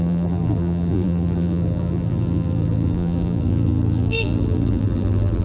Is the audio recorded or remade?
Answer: remade